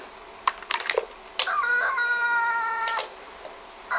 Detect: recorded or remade recorded